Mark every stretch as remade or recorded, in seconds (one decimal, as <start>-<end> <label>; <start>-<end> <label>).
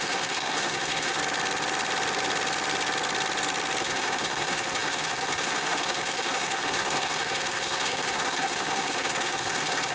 0.0-1.2 remade; 1.2-3.8 recorded; 3.8-9.9 remade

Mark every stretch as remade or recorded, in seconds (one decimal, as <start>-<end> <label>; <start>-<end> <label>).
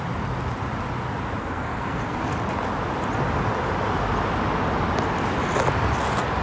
0.0-1.4 recorded; 1.4-2.2 remade; 2.2-6.4 recorded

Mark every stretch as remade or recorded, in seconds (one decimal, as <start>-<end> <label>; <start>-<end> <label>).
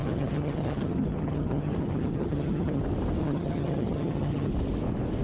0.0-2.8 remade; 2.8-3.2 recorded; 3.2-4.5 remade; 4.5-5.2 recorded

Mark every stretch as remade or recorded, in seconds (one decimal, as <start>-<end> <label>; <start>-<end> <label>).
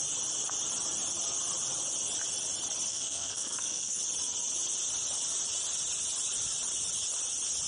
0.0-2.9 recorded; 2.9-4.0 remade; 4.0-7.7 recorded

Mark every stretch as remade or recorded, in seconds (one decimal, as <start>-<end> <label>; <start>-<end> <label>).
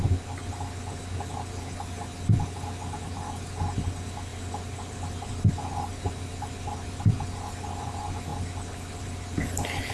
0.0-9.9 recorded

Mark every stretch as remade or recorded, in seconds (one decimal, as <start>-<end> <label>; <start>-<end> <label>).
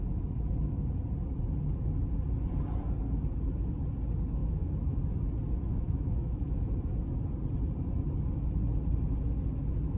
0.0-4.4 recorded; 4.4-5.0 remade; 5.0-5.7 recorded; 5.7-6.6 remade; 6.6-10.0 recorded